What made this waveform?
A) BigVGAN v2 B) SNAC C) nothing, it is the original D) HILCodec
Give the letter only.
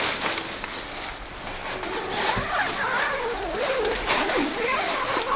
C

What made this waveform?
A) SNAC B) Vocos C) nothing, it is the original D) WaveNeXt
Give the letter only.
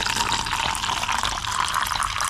C